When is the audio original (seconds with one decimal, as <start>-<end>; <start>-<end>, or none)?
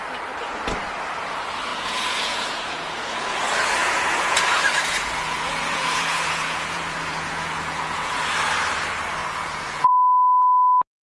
0.0-1.7; 3.4-3.8; 8.3-9.2; 9.9-11.0